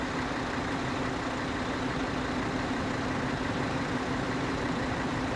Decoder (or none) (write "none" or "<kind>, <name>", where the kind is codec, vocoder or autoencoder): vocoder, BigVGAN v2